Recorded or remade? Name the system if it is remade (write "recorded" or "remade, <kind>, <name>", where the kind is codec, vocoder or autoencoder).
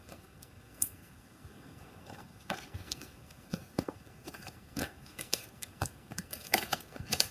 remade, codec, SNAC